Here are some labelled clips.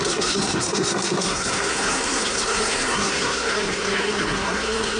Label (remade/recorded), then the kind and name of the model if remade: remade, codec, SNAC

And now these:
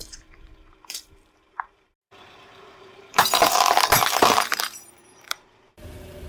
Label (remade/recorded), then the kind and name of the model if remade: remade, vocoder, BigVGAN v2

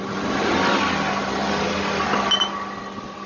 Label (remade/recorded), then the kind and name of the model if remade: recorded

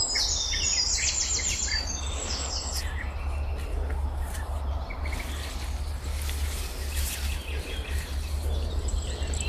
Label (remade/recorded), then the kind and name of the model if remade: recorded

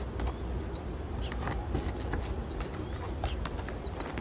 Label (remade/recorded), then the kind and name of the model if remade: recorded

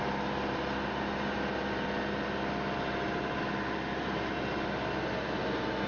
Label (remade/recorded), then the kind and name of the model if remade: recorded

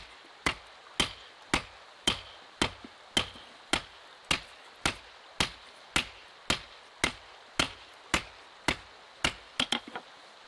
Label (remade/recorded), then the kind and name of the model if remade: recorded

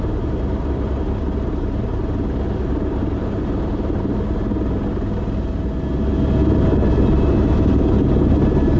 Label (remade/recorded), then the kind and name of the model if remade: recorded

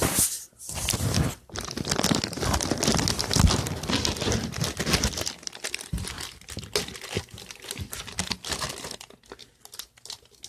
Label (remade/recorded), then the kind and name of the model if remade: recorded